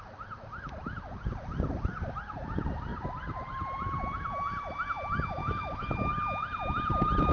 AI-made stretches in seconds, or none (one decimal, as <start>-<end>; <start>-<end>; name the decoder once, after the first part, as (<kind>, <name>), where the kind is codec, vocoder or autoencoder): 5.4-6.1 (autoencoder, DAC-VAE)